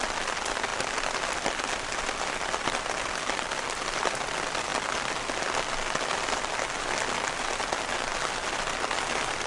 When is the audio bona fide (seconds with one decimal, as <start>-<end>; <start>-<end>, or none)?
0.0-9.5